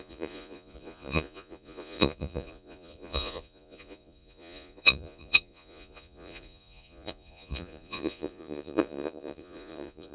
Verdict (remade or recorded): remade